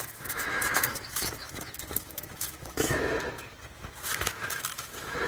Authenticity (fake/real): fake